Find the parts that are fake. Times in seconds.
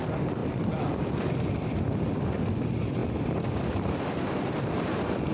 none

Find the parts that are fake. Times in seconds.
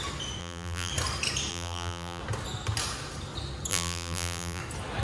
0.4-0.9 (vocoder, BigVGAN v2); 1.5-2.2; 3.7-4.6